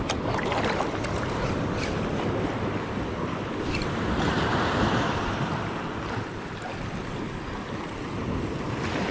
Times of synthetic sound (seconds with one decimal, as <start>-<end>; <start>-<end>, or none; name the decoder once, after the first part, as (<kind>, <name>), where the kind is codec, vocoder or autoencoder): 3.8-4.5 (vocoder, BigVGAN v2)

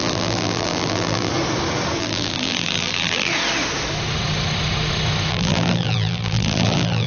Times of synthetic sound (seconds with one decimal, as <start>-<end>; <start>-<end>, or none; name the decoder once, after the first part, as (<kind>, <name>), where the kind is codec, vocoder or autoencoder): 0.0-1.3 (vocoder, BigVGAN v2); 2.0-3.3; 5.3-7.1

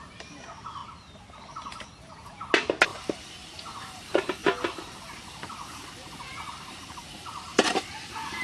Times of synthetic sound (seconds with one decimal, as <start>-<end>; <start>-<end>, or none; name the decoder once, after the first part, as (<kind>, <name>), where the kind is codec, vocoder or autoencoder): 0.0-0.8 (vocoder, BigVGAN v2); 2.0-4.4; 5.8-8.4